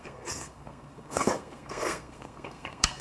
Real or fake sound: fake